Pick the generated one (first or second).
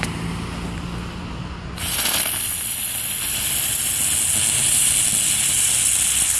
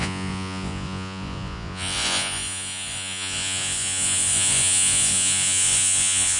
second